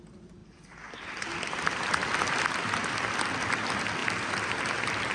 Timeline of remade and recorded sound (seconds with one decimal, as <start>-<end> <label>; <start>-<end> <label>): 0.0-5.1 recorded